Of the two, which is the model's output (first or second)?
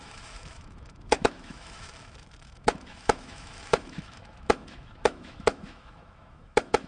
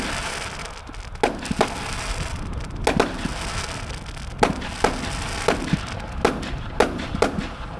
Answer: first